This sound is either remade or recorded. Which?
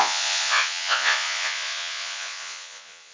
remade